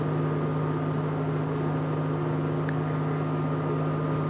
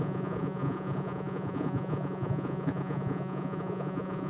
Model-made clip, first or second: second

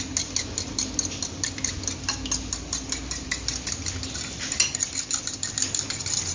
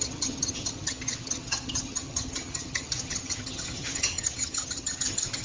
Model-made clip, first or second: second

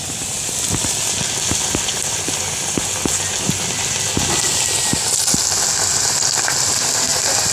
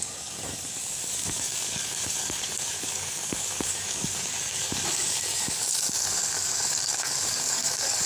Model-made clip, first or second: second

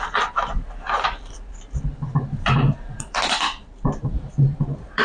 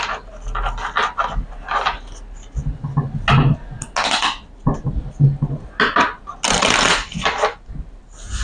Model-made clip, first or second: first